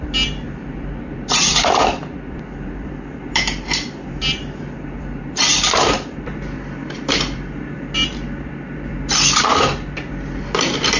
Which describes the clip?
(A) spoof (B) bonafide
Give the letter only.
A